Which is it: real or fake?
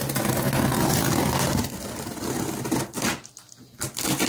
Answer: real